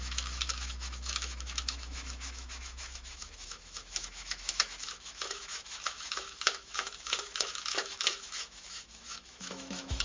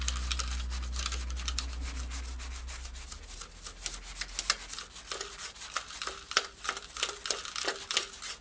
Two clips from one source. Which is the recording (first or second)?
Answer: second